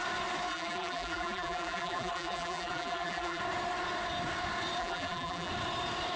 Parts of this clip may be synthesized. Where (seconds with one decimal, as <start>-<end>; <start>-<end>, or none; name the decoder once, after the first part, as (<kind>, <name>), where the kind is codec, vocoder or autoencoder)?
0.5-3.4 (vocoder, BigVGAN v2); 4.8-5.5